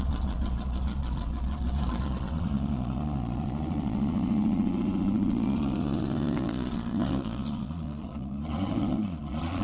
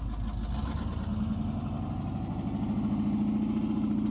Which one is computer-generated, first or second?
first